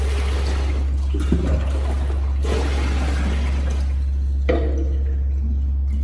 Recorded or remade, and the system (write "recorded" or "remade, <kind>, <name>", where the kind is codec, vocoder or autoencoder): recorded